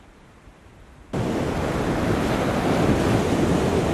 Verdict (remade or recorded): recorded